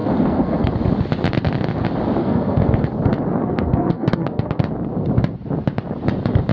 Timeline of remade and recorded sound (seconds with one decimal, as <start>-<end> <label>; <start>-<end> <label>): 0.0-0.7 remade; 0.7-2.2 recorded; 2.2-2.9 remade; 2.9-3.4 recorded; 3.4-4.6 remade; 4.6-6.5 recorded